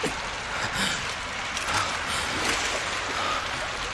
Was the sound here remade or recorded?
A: recorded